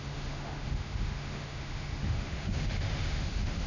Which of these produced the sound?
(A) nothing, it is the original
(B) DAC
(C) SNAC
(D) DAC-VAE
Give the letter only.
D